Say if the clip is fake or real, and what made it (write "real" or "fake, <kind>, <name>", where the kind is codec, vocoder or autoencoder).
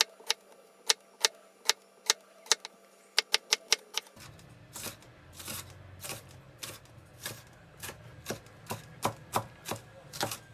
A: real